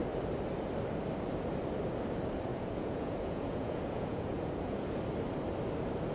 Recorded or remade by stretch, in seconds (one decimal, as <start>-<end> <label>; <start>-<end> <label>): 0.0-2.5 recorded; 2.5-5.0 remade; 5.0-6.1 recorded